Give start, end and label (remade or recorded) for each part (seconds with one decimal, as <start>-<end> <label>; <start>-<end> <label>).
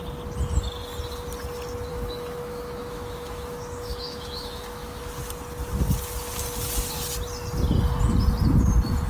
0.0-1.9 recorded; 1.9-5.0 remade; 5.0-9.1 recorded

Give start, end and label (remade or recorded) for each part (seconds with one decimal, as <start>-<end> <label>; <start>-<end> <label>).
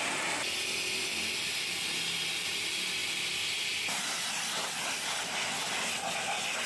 0.0-6.7 recorded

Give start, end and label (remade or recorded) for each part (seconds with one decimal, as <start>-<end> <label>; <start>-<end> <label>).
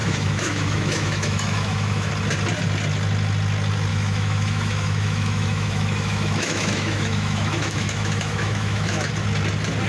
0.0-2.1 remade; 2.1-3.9 recorded; 3.9-9.1 remade; 9.1-9.9 recorded